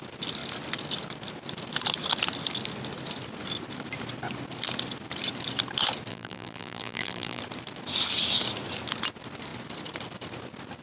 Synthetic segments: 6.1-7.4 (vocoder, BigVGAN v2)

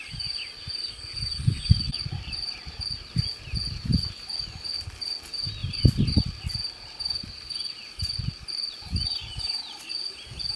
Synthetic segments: none

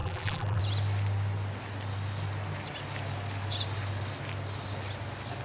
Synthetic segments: 0.0-0.6 (vocoder, BigVGAN v2)

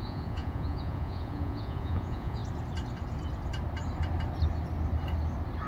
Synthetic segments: 0.0-2.4 (vocoder, Vocos)